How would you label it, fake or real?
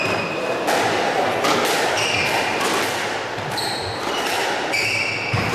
real